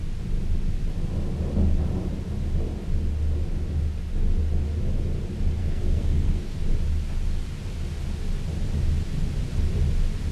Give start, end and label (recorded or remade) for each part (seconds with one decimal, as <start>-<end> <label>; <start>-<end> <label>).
0.0-5.6 recorded; 5.6-6.6 remade; 6.6-10.3 recorded